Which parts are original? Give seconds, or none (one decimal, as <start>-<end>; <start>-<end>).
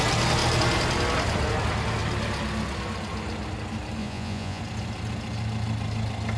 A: 0.0-4.0; 4.6-6.4